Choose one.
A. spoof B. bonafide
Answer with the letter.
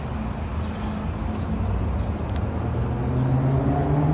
B